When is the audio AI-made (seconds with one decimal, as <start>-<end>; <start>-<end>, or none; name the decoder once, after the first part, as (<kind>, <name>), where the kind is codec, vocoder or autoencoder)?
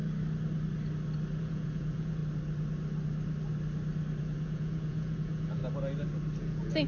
1.4-2.2 (vocoder, Vocos); 4.2-5.6; 6.4-6.9